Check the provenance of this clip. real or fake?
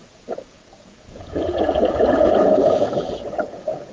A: fake